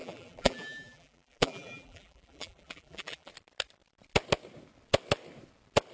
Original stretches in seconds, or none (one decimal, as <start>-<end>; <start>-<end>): 3.3-5.9